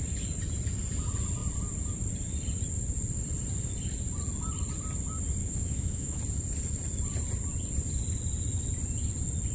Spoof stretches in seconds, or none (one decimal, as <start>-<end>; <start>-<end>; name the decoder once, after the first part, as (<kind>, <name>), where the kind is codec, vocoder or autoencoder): 5.4-6.2 (autoencoder, DAC-VAE)

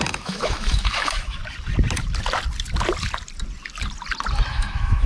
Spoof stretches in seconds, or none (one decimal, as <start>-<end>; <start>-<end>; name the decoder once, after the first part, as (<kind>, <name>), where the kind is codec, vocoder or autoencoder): 0.0-1.4 (autoencoder, DAC-VAE); 4.5-5.1

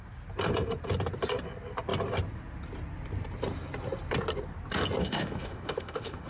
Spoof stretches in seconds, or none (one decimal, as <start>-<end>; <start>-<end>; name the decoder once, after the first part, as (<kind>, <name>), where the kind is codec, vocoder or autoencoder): 5.0-6.3 (autoencoder, DAC-VAE)

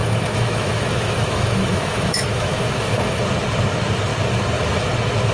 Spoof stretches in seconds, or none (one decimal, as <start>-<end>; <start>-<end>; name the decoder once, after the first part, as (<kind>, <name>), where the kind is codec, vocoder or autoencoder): 0.0-3.2 (autoencoder, DAC-VAE)

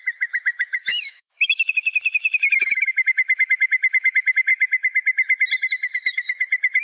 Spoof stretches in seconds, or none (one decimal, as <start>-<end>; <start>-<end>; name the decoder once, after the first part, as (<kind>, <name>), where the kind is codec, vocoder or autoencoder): 0.0-4.5 (autoencoder, DAC-VAE); 5.7-6.8

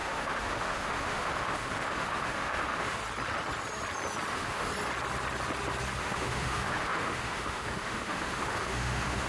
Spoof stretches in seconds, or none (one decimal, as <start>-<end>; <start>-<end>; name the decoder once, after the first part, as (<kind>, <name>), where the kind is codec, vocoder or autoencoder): 0.0-3.0 (autoencoder, DAC-VAE); 4.3-4.7; 6.0-9.3

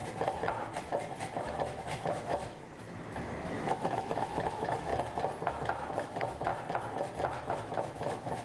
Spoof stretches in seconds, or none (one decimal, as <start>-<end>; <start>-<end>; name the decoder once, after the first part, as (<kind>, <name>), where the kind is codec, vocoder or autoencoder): 1.4-4.9 (autoencoder, DAC-VAE); 5.5-6.5; 7.5-8.4

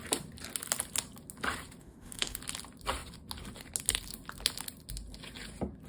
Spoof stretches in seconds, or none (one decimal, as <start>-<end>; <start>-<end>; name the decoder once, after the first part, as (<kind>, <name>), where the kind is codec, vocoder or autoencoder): 1.8-2.4 (autoencoder, DAC-VAE)